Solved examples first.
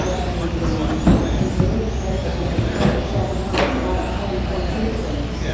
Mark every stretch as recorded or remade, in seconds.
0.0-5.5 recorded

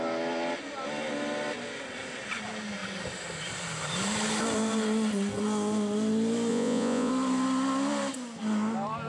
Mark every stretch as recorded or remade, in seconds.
0.0-6.5 recorded; 6.5-7.1 remade; 7.1-9.1 recorded

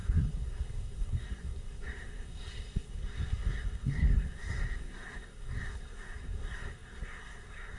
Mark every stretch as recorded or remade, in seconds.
0.0-7.8 remade

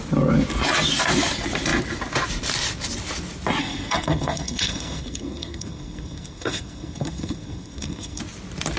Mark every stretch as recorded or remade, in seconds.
0.0-3.6 recorded; 3.6-8.2 remade; 8.2-8.8 recorded